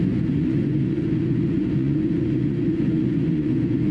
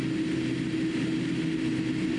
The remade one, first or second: first